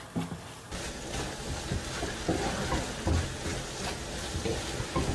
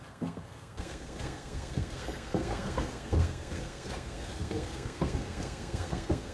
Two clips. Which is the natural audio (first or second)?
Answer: first